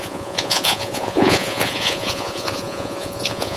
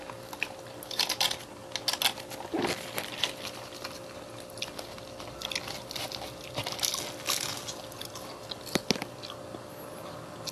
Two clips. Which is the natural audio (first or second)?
second